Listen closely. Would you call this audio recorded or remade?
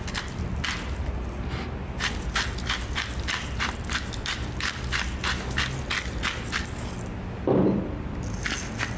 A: recorded